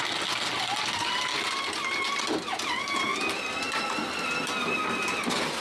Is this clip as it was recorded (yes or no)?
yes